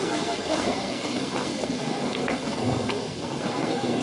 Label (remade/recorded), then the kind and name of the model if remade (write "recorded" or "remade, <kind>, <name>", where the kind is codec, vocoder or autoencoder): remade, codec, SNAC